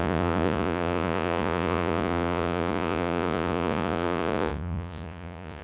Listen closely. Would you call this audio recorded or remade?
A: remade